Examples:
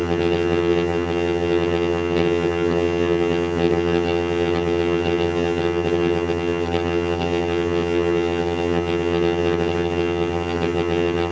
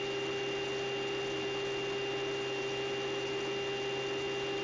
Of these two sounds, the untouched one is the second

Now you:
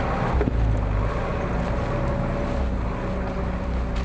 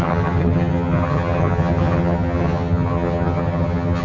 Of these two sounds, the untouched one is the first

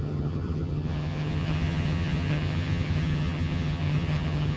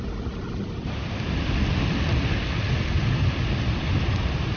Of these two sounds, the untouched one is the second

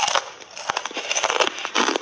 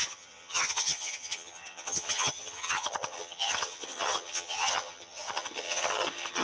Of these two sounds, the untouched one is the first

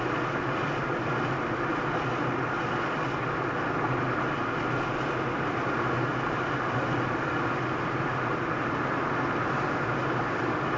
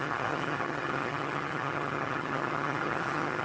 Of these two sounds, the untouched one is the first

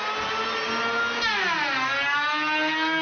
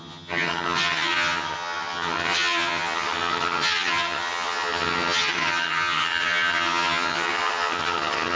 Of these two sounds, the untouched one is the first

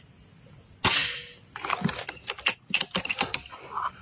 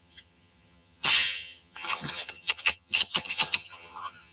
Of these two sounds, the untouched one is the first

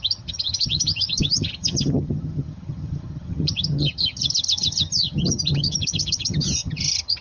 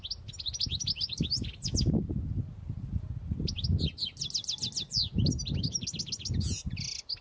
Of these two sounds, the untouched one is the second